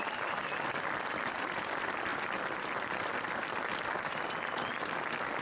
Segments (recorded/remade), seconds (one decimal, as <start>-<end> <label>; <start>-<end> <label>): 0.0-5.4 recorded